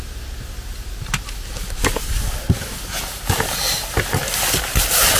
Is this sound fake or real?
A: real